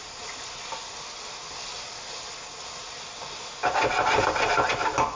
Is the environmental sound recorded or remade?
recorded